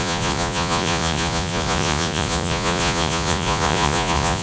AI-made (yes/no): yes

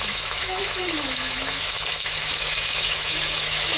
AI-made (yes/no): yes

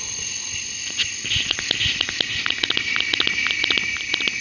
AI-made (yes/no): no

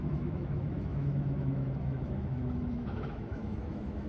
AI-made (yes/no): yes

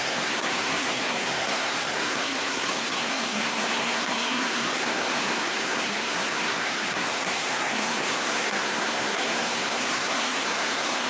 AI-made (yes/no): yes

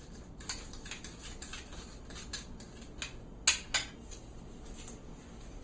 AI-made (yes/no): no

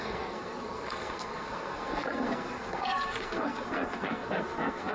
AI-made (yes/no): yes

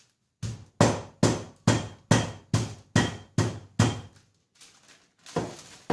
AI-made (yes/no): no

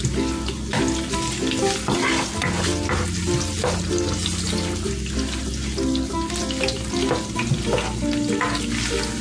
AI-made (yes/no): no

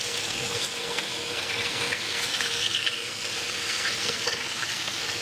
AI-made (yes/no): yes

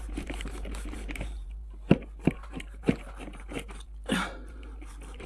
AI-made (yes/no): yes